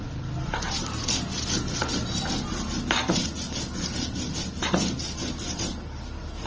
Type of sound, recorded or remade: recorded